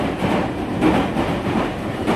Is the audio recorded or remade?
recorded